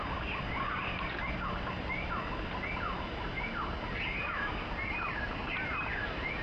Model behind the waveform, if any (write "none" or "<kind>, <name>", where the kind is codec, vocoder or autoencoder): none